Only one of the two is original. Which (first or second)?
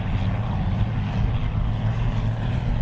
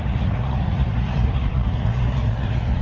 first